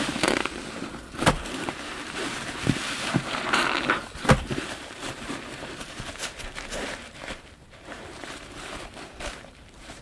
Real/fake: fake